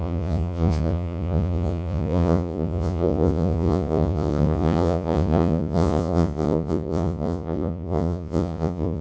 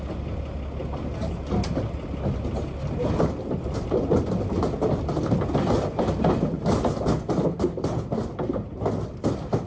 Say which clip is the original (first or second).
second